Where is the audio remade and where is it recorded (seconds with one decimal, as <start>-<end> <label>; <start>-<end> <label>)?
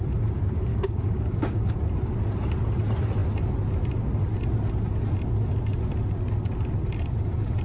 0.0-0.7 recorded; 0.7-1.7 remade; 1.7-7.6 recorded